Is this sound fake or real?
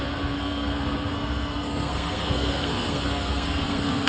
fake